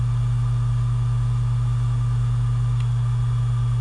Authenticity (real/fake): real